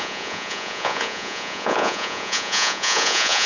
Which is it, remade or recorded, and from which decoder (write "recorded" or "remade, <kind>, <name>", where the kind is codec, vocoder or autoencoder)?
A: remade, vocoder, Vocos